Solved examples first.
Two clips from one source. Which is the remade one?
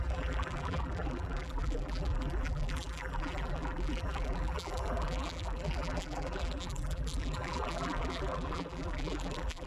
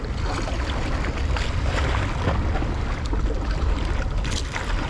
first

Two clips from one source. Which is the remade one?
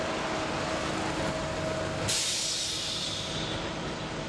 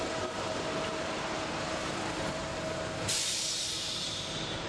second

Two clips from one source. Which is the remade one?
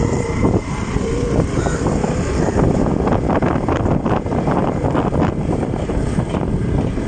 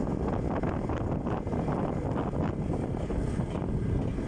first